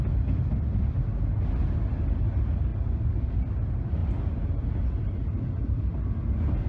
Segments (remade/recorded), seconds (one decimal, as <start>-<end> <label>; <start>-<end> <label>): 0.0-6.7 recorded